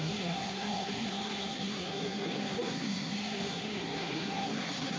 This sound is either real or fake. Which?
fake